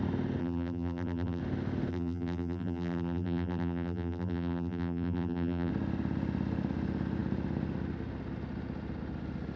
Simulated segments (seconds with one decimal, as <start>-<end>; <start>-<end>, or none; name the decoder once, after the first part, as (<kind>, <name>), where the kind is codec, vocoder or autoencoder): 0.4-1.4 (vocoder, BigVGAN v2); 1.9-5.7